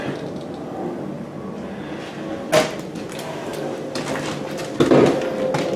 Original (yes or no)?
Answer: yes